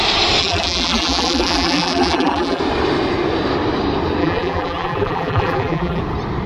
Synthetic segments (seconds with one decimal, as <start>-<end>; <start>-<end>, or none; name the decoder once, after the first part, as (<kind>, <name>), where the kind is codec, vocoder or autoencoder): 0.4-2.6 (vocoder, BigVGAN v2); 4.2-6.0